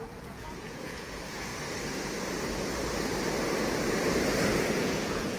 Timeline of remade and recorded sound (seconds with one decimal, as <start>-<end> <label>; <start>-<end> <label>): 0.0-1.5 remade; 1.5-4.7 recorded; 4.7-5.4 remade